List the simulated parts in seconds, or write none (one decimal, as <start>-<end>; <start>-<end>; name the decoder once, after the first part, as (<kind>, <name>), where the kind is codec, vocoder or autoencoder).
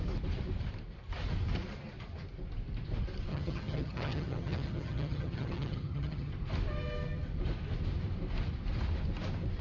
3.3-6.3 (vocoder, HiFi-GAN)